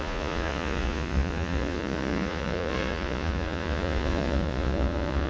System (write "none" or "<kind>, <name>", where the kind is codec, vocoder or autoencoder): vocoder, Vocos